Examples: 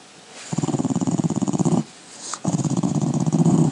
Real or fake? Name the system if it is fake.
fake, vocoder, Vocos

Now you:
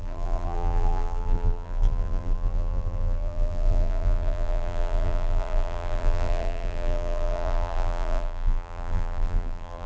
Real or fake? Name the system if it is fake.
fake, vocoder, BigVGAN v2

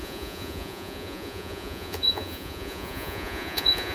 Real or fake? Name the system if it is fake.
fake, vocoder, Vocos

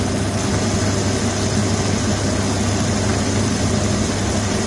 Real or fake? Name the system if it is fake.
real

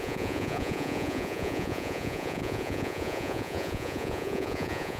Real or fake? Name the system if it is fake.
fake, vocoder, Vocos